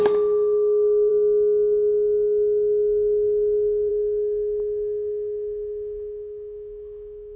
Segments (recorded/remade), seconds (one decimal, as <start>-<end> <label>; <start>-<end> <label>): 0.0-1.1 remade; 1.1-3.9 recorded; 3.9-7.4 remade